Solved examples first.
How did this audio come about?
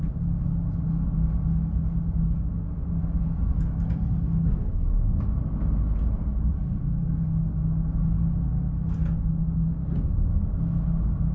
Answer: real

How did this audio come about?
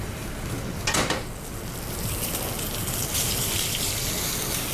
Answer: real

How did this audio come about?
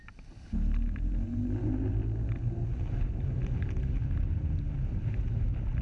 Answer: real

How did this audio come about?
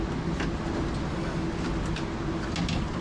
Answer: real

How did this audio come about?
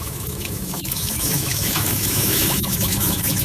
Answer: fake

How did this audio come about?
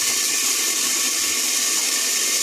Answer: real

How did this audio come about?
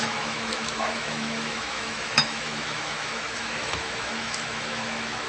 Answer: fake